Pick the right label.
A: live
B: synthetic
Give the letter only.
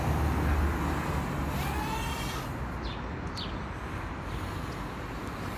A